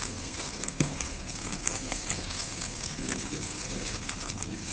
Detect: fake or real fake